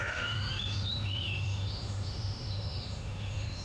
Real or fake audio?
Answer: fake